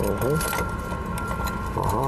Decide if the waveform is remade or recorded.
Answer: recorded